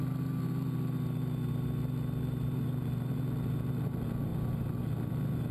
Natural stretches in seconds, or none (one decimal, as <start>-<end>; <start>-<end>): 0.0-5.5